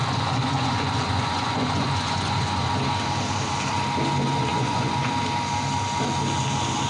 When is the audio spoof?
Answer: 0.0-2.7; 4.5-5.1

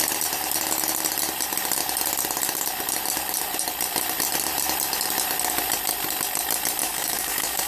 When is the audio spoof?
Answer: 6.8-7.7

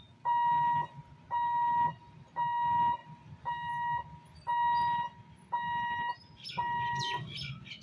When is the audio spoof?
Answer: none

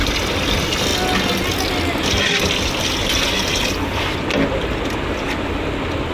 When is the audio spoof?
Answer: none

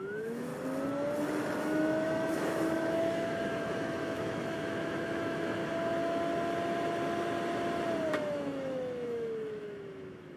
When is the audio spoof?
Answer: 0.0-0.5; 1.6-5.6; 8.1-10.4